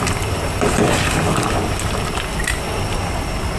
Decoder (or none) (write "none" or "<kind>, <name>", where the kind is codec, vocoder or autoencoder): none